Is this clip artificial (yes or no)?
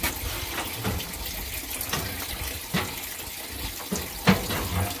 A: no